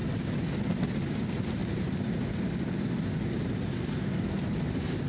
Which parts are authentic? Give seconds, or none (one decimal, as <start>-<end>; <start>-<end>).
0.0-0.9; 1.6-4.1